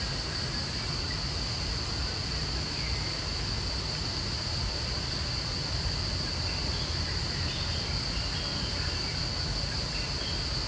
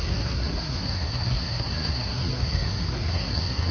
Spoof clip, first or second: second